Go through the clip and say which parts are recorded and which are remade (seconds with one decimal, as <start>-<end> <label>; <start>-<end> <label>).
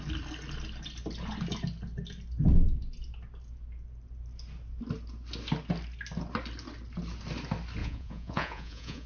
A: 0.0-7.8 recorded; 7.8-9.1 remade